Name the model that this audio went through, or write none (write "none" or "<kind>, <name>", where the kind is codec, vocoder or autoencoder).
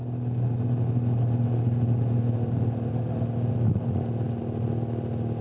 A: none